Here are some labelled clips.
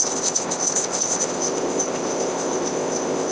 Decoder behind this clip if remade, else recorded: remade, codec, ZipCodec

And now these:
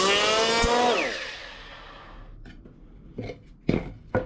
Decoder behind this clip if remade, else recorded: recorded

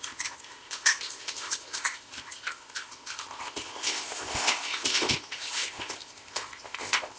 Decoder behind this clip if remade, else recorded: remade, codec, ZipCodec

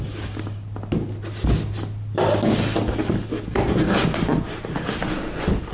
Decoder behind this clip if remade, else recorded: recorded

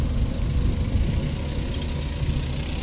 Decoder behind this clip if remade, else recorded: recorded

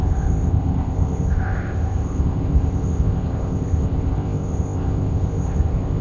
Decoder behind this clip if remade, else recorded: remade, codec, ZipCodec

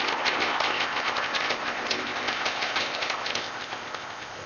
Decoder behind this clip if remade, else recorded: remade, codec, ZipCodec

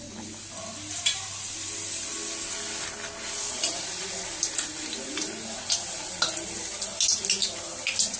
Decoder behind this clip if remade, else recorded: recorded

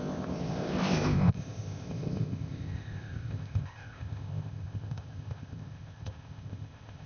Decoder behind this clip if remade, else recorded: remade, codec, ZipCodec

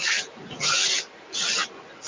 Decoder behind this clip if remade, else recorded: recorded